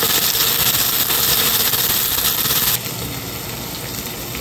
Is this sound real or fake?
real